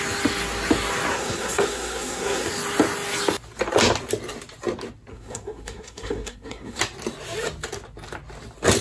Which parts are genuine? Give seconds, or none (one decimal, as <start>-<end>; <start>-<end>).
0.0-1.1; 2.5-5.1; 6.8-8.8